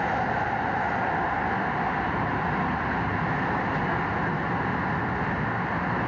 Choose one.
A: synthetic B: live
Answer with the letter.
B